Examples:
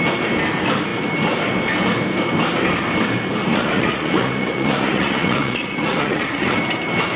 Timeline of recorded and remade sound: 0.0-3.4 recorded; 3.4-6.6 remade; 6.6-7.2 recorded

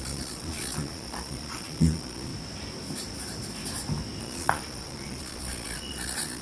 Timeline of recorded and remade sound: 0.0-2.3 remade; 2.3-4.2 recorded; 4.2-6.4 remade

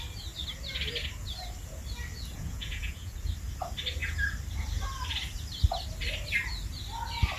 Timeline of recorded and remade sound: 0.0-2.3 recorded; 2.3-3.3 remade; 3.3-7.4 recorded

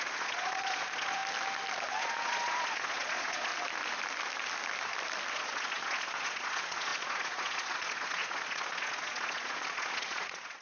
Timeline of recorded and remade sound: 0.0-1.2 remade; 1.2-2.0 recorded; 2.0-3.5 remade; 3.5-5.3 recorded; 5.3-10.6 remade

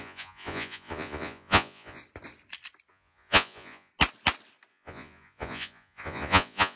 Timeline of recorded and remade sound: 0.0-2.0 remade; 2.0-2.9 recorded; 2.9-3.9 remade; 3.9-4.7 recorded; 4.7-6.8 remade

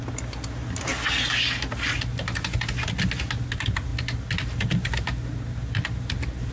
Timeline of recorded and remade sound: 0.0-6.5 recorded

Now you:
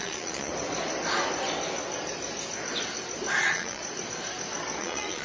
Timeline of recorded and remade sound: 0.0-0.5 remade; 0.5-3.4 recorded; 3.4-3.8 remade; 3.8-4.8 recorded; 4.8-5.2 remade

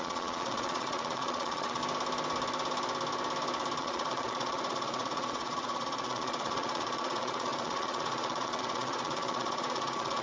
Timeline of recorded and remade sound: 0.0-1.8 remade; 1.8-3.8 recorded; 3.8-10.2 remade